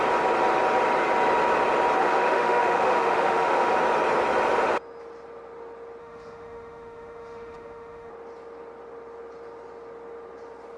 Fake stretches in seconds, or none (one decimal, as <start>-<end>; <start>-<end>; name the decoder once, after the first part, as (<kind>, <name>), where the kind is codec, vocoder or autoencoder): 2.0-3.7 (autoencoder, DAC-VAE); 6.0-8.1